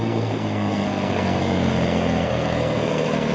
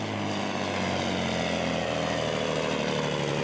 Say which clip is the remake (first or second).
first